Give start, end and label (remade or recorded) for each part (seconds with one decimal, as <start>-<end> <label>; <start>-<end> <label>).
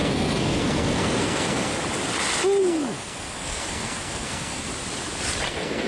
0.0-1.7 remade; 1.7-2.6 recorded; 2.6-4.7 remade; 4.7-5.5 recorded; 5.5-5.9 remade